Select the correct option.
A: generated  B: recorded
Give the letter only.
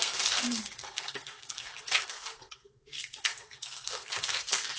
A